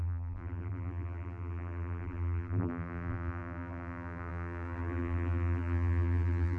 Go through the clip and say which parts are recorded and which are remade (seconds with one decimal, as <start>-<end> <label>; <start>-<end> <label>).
0.0-6.6 remade